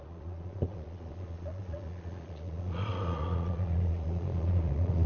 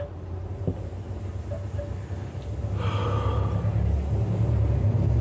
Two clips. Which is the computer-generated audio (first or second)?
first